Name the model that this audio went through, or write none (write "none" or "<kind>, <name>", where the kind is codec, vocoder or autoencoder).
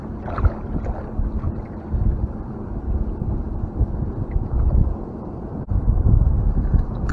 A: none